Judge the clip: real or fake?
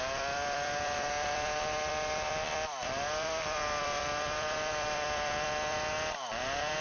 fake